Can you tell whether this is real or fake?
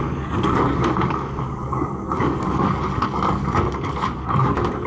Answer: fake